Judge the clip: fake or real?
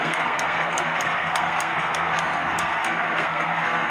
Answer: fake